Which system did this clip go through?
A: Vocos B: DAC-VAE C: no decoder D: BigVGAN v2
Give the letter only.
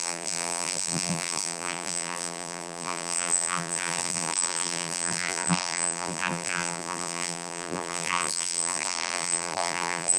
D